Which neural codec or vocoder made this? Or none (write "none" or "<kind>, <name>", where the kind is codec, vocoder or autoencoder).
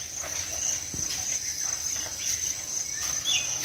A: none